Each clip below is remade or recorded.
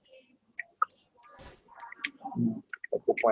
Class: recorded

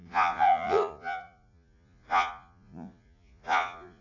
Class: remade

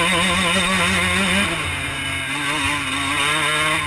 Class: recorded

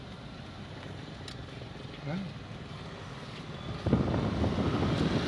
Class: recorded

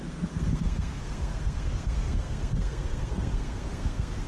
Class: remade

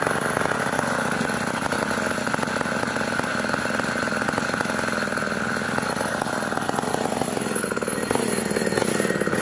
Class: recorded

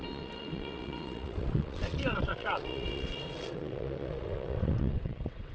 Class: remade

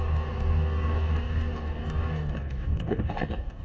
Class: remade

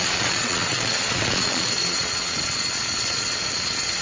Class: remade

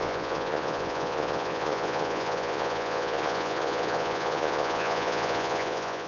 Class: remade